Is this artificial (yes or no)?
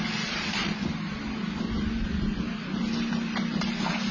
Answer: no